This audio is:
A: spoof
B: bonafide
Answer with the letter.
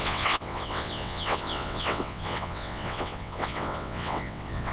A